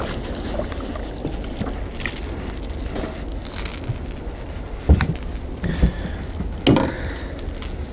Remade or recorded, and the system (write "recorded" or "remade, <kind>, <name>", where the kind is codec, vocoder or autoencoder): recorded